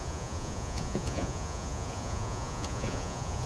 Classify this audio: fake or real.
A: fake